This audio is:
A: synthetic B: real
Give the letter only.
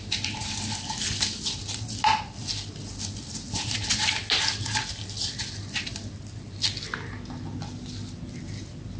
B